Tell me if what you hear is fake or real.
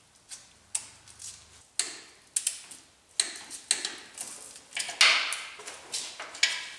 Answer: real